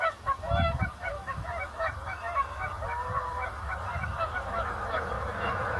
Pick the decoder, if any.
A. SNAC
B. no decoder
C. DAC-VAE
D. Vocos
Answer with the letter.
C